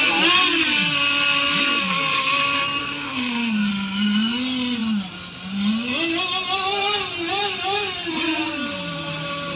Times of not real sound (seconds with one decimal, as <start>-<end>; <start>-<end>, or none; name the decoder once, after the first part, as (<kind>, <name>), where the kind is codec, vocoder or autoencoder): 2.8-3.7 (codec, SNAC)